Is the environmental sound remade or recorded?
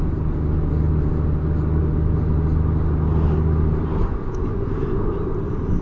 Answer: recorded